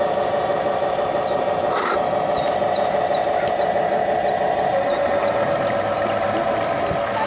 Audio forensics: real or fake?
fake